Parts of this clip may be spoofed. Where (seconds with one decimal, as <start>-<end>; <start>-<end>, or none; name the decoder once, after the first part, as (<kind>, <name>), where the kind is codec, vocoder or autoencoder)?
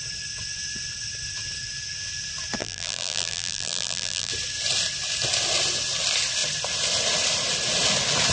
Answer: 2.6-4.3 (vocoder, BigVGAN v2)